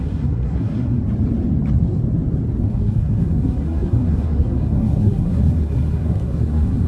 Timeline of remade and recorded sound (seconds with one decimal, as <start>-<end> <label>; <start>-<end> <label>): 0.0-1.0 remade; 1.0-2.7 recorded; 2.7-6.9 remade